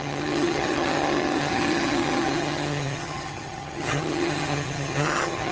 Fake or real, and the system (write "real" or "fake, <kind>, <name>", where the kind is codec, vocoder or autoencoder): fake, vocoder, HiFi-GAN